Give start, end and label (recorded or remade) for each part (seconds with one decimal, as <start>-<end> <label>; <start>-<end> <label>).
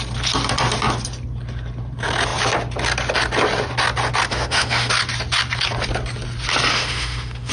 0.0-4.3 recorded; 4.3-4.9 remade; 4.9-6.7 recorded; 6.7-7.5 remade